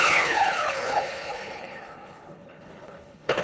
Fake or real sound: fake